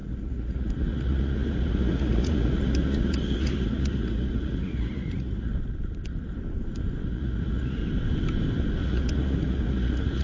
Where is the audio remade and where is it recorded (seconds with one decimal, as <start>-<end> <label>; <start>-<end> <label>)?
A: 0.0-5.5 remade; 5.5-7.1 recorded; 7.1-7.8 remade; 7.8-8.8 recorded; 8.8-10.2 remade